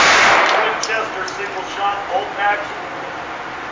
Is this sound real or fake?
real